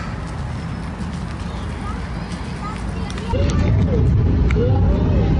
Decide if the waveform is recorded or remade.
recorded